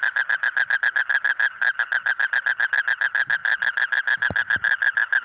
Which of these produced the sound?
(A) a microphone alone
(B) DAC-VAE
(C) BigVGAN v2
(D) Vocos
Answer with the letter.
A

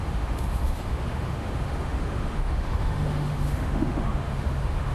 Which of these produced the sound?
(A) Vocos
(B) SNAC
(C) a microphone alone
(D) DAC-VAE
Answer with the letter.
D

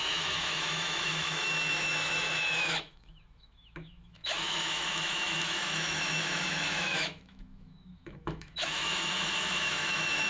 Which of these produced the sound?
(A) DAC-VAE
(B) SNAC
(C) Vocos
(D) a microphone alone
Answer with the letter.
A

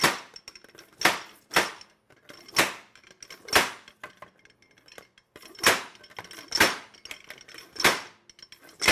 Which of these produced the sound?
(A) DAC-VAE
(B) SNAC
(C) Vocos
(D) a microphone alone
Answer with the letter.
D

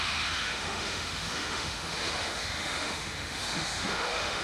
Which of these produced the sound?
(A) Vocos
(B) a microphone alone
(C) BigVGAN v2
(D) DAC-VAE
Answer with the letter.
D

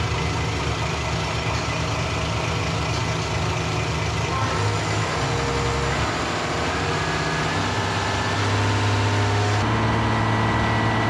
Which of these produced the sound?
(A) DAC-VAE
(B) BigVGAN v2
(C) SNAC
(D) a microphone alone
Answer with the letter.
D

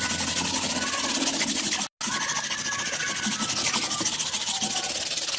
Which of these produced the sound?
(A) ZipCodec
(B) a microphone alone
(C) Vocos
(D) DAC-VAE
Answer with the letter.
B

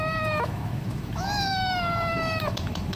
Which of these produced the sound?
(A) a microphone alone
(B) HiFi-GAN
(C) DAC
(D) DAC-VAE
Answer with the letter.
D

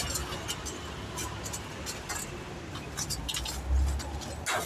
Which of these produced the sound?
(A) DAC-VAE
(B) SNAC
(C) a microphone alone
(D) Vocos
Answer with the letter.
C